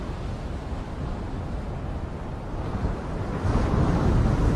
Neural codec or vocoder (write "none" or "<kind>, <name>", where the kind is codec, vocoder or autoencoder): none